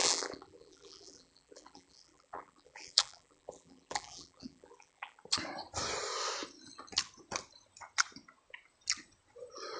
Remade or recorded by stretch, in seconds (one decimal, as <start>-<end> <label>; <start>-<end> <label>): 0.0-5.2 remade; 5.2-9.8 recorded